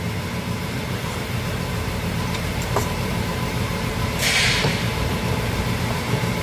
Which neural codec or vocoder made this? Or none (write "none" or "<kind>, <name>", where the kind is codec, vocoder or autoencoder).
vocoder, BigVGAN v2